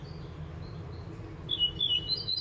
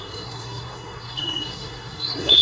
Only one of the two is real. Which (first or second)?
first